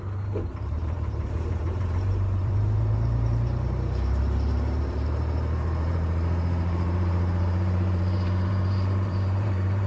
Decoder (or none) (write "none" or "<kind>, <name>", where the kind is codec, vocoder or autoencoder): vocoder, BigVGAN v2